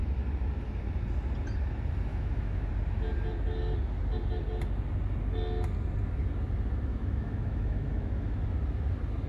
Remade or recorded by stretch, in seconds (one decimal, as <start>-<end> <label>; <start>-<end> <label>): 0.0-2.1 recorded; 2.1-2.7 remade; 2.7-6.9 recorded; 6.9-8.4 remade; 8.4-9.3 recorded